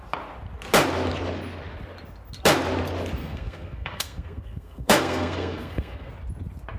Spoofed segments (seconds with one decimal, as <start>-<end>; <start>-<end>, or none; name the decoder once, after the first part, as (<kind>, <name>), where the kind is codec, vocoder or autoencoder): 3.2-6.1 (codec, SNAC)